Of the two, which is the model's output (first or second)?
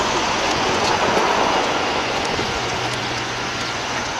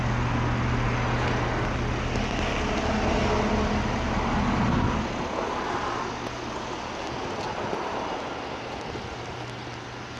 first